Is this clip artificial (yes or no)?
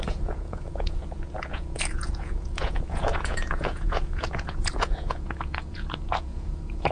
yes